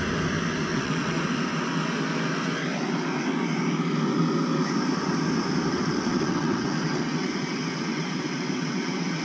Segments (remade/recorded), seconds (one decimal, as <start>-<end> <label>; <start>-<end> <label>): 0.0-0.7 recorded; 0.7-1.2 remade; 1.2-5.7 recorded; 5.7-9.2 remade